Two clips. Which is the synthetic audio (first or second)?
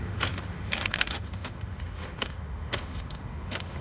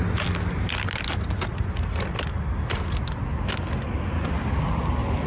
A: first